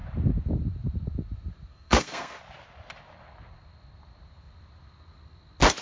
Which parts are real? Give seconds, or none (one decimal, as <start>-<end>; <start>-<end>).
0.0-1.7; 2.4-5.8